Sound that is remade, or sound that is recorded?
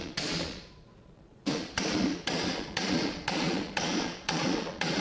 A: remade